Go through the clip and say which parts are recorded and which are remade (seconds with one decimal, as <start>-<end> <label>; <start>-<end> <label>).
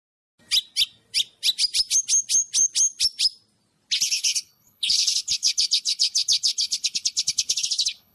0.0-4.1 recorded; 4.1-8.1 remade